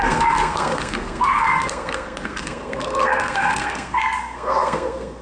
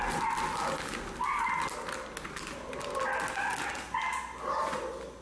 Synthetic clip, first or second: first